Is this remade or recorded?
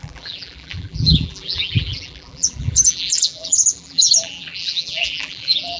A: remade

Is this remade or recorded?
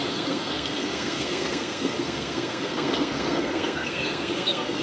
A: remade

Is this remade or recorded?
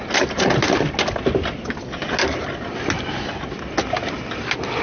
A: recorded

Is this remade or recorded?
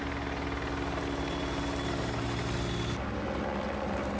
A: recorded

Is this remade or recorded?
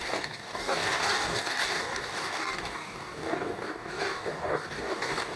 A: remade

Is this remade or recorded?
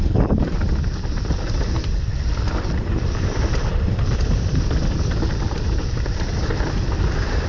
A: remade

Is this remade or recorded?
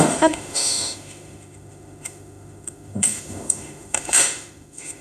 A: remade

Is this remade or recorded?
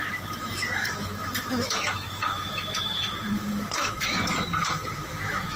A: remade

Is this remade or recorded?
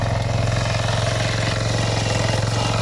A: recorded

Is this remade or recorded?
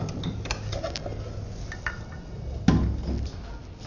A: recorded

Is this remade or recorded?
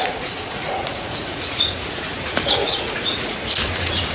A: remade